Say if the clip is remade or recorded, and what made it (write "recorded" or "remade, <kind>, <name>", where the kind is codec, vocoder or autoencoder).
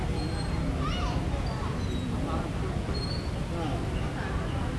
recorded